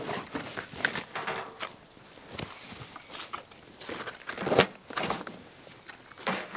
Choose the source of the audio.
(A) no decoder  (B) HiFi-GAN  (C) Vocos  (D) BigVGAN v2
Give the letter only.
A